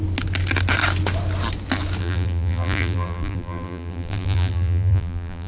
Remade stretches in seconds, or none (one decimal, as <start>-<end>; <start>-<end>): 2.0-5.5